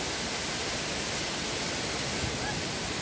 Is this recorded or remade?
recorded